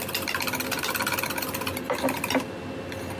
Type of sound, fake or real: real